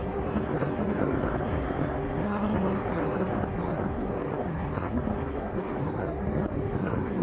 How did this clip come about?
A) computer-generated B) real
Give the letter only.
A